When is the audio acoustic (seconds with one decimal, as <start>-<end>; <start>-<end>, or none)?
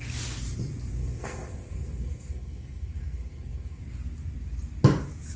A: 0.0-1.0; 3.8-5.4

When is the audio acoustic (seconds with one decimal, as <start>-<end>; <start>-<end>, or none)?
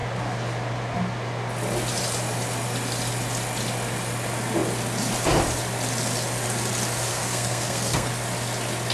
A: 0.0-7.1; 8.1-8.9